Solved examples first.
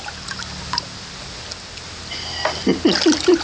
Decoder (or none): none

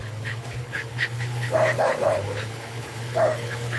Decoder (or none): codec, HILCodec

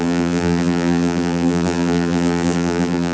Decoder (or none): vocoder, BigVGAN v2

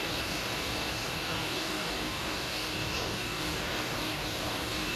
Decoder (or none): codec, DAC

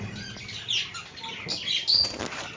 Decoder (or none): none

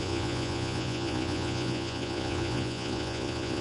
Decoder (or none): vocoder, Vocos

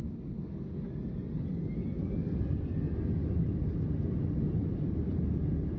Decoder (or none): none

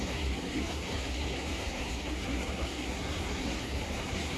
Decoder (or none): codec, SNAC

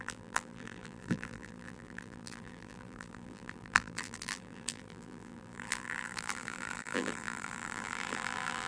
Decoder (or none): vocoder, BigVGAN v2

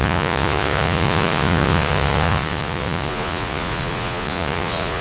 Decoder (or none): vocoder, Vocos